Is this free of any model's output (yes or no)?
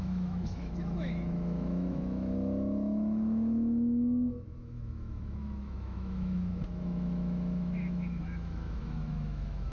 no